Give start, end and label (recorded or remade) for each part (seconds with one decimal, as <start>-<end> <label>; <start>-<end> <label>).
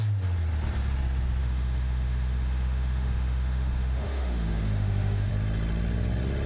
0.0-1.4 recorded; 1.4-5.3 remade; 5.3-6.5 recorded